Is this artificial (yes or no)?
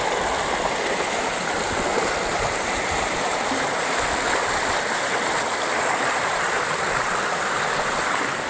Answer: yes